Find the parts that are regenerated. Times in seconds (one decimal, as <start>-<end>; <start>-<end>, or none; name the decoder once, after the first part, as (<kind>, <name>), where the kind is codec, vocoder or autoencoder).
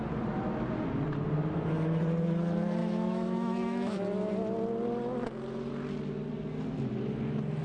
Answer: 2.8-4.0 (autoencoder, DAC-VAE)